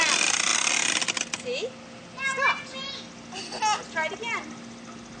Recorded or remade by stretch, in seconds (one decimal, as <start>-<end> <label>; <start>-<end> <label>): 0.0-5.2 recorded